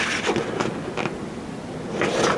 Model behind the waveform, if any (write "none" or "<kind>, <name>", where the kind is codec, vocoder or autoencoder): none